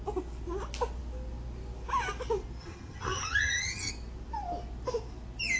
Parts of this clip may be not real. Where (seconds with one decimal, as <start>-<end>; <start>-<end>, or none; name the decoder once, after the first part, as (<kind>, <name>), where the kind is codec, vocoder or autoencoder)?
2.6-3.9 (vocoder, HiFi-GAN)